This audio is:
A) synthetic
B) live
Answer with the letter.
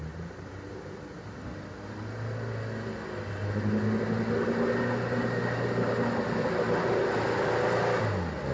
B